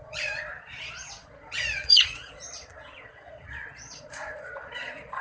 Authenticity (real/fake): fake